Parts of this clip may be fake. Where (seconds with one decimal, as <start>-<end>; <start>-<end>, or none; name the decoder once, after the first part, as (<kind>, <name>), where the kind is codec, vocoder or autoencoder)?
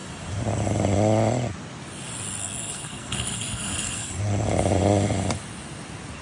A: 2.4-4.2 (codec, SNAC)